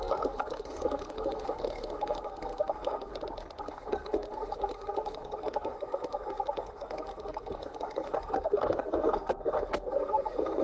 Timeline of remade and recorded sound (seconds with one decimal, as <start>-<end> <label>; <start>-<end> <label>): 0.0-3.1 remade; 3.1-3.6 recorded; 3.6-10.6 remade